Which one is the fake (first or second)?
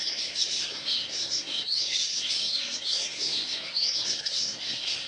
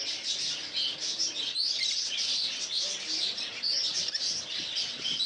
first